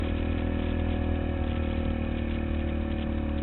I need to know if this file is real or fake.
real